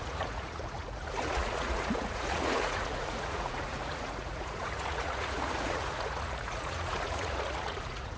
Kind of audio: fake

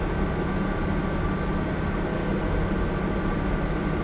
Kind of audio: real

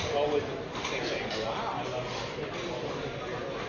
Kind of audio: real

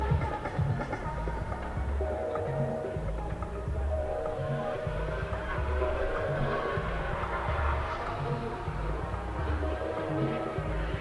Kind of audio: fake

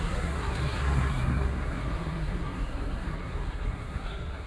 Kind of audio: fake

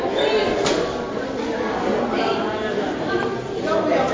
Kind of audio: real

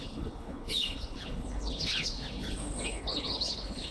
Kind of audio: fake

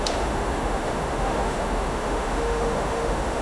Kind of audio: fake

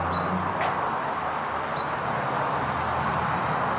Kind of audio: real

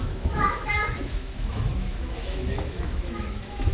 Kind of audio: fake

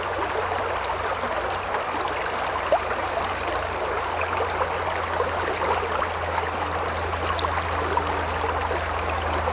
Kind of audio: real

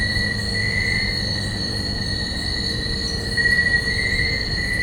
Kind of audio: fake